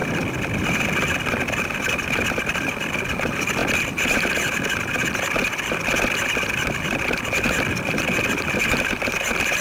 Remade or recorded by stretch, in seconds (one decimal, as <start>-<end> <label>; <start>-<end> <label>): 0.0-0.6 remade; 0.6-9.6 recorded